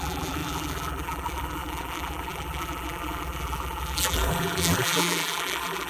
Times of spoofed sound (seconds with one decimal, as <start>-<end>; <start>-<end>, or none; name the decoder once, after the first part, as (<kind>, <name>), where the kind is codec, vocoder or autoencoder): 0.0-5.9 (vocoder, BigVGAN v2)